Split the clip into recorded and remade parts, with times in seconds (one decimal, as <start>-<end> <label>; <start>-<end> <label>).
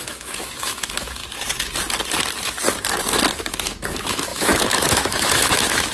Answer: 0.0-1.2 remade; 1.2-3.4 recorded; 3.4-5.9 remade